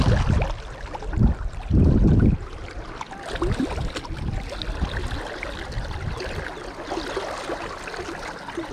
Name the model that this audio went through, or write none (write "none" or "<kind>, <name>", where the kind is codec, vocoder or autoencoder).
none